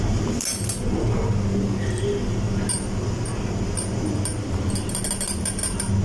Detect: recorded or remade recorded